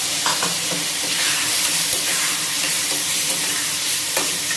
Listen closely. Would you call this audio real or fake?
fake